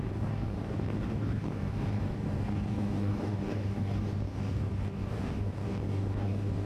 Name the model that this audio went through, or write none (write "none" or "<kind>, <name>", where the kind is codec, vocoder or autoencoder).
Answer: codec, DAC